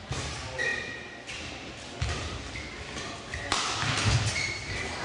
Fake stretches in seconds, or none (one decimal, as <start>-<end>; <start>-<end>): none